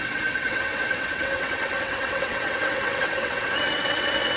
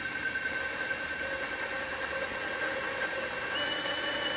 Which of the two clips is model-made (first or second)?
first